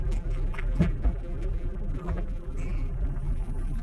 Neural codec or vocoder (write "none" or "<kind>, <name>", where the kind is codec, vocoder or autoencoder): vocoder, BigVGAN v2